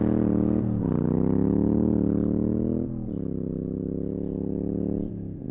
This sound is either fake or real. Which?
real